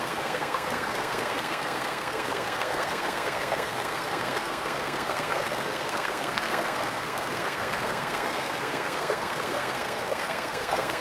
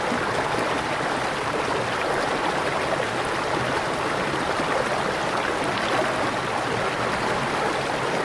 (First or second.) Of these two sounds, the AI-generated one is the first